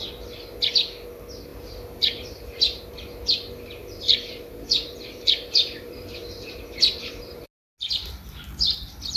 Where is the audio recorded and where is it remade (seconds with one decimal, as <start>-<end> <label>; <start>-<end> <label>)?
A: 0.0-1.5 recorded; 1.5-2.9 remade; 2.9-3.8 recorded; 3.8-7.4 remade; 7.4-9.2 recorded